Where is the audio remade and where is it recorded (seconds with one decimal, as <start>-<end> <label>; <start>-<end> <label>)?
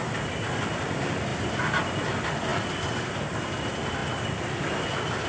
0.0-5.3 recorded